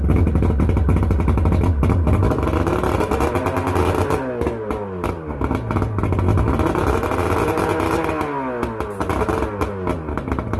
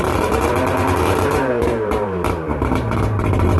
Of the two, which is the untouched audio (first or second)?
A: first